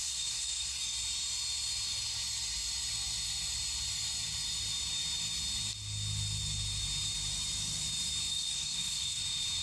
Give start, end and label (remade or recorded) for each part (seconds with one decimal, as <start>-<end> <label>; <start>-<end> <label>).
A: 0.0-0.8 remade; 0.8-8.3 recorded; 8.3-9.2 remade; 9.2-9.6 recorded